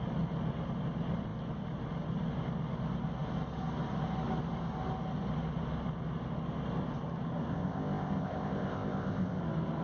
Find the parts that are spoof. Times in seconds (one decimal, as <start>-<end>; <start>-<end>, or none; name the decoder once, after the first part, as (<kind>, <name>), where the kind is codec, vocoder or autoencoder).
7.5-9.4 (codec, ZipCodec)